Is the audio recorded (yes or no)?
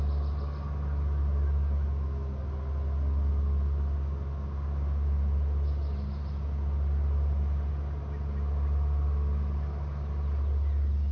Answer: yes